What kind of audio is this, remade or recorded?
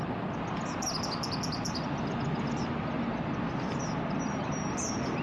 recorded